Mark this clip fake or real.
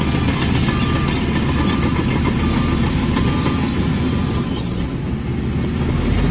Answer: real